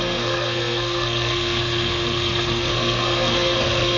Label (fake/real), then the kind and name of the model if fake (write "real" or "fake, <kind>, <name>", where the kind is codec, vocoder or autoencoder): fake, codec, SNAC